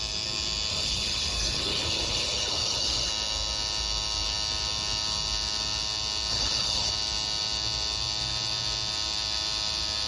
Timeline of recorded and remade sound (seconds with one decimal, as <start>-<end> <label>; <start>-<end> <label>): 0.0-0.7 recorded; 0.7-3.1 remade; 3.1-6.3 recorded; 6.3-6.9 remade; 6.9-10.1 recorded